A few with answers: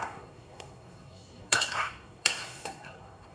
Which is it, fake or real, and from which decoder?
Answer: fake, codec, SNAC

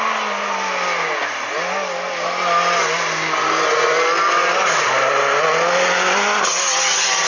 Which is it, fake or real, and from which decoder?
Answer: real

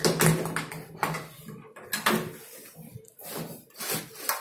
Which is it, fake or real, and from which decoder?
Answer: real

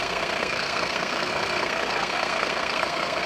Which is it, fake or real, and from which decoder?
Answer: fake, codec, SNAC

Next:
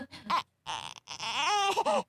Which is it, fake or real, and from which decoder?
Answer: real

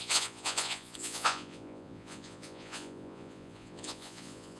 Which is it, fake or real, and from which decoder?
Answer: fake, vocoder, Vocos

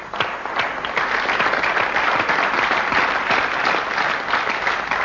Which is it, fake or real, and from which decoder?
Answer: real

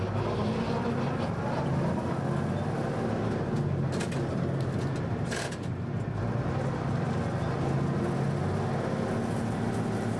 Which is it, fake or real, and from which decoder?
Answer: real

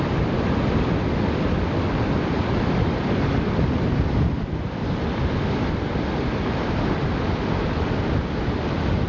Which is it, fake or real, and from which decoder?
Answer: real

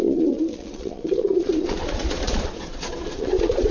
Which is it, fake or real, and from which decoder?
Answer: fake, vocoder, Vocos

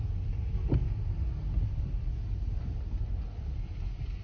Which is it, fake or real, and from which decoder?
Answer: real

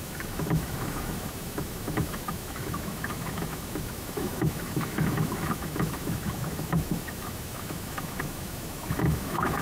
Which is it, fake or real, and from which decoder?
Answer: fake, autoencoder, DAC-VAE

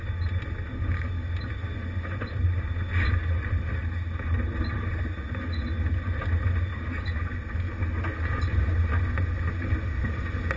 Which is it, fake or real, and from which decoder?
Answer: real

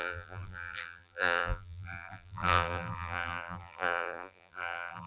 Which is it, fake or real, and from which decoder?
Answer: fake, vocoder, BigVGAN v2